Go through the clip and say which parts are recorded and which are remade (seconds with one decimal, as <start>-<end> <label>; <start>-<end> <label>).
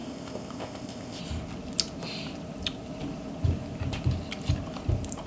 0.0-1.2 remade; 1.2-5.3 recorded